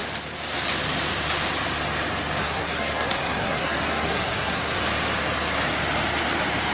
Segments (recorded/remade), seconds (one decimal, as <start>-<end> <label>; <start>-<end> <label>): 0.0-2.4 recorded; 2.4-4.8 remade; 4.8-6.7 recorded